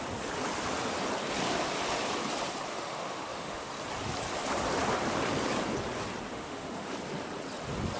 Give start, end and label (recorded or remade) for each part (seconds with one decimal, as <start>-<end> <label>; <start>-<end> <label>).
0.0-2.7 recorded; 2.7-3.7 remade; 3.7-6.3 recorded; 6.3-6.9 remade; 6.9-8.0 recorded